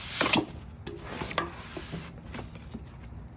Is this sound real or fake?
real